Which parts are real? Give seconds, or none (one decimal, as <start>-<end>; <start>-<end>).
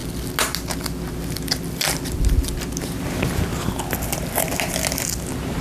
0.0-5.6